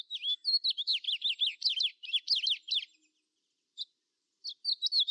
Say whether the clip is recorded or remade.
recorded